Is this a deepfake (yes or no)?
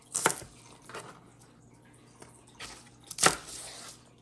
no